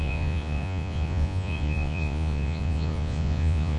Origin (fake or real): fake